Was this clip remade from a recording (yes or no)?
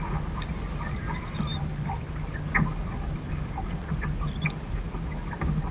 no